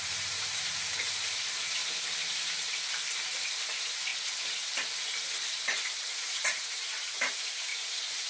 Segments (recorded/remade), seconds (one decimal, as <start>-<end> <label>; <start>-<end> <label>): 0.0-1.8 remade; 1.8-2.9 recorded; 2.9-4.1 remade; 4.1-6.0 recorded; 6.0-7.7 remade; 7.7-8.3 recorded